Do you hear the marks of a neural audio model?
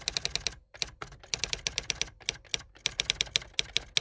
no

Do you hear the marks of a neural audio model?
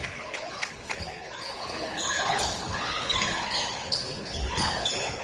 yes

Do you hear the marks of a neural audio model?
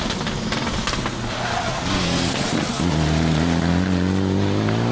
no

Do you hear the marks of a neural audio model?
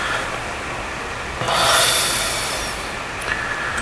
no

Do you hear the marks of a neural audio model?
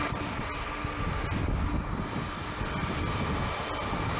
no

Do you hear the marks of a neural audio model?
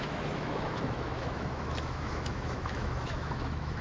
yes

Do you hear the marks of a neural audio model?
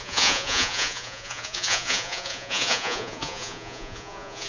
yes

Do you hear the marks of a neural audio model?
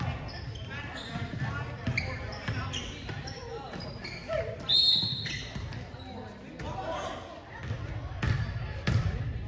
no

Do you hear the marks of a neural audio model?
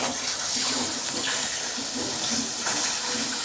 no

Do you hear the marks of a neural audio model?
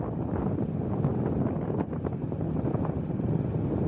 no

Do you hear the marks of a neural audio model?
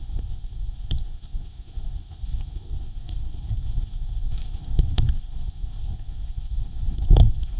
yes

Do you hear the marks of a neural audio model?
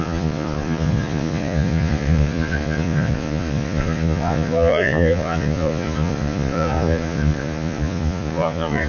yes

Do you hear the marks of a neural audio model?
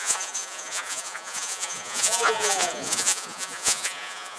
yes